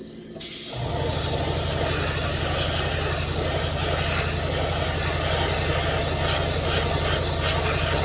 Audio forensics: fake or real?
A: real